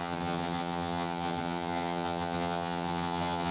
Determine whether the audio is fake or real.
fake